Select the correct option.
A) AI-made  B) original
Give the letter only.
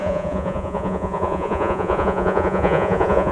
A